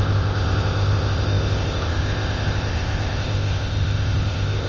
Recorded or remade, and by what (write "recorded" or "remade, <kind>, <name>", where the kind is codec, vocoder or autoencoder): remade, codec, ZipCodec